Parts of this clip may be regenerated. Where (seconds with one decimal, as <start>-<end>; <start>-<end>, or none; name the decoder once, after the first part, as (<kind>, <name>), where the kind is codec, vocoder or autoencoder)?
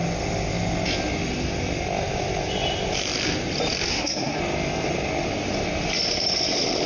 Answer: 3.9-4.4 (codec, SNAC)